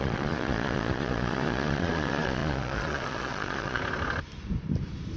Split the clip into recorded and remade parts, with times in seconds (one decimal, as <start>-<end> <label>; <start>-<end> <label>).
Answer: 0.0-3.8 remade; 3.8-5.2 recorded